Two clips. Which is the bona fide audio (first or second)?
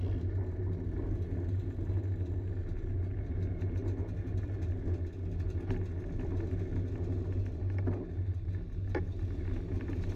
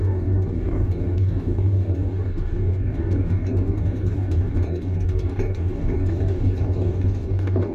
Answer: first